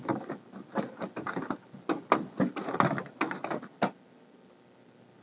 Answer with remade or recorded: recorded